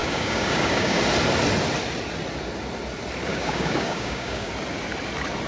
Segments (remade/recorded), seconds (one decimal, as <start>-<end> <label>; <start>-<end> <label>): 0.0-1.0 remade; 1.0-3.3 recorded; 3.3-4.5 remade; 4.5-5.5 recorded